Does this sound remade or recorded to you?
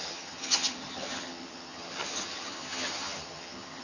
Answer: remade